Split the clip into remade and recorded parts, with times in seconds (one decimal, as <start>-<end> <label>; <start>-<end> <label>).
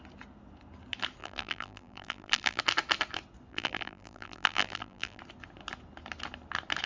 0.0-1.2 recorded; 1.2-2.6 remade; 2.6-3.5 recorded; 3.5-5.2 remade; 5.2-6.9 recorded